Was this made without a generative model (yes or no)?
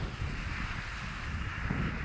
yes